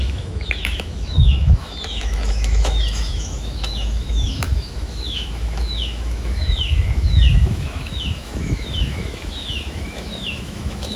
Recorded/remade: remade